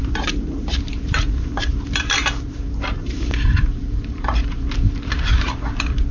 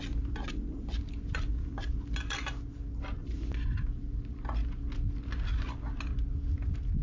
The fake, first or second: first